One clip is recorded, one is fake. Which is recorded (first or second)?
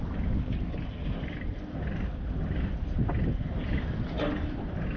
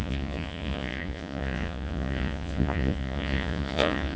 first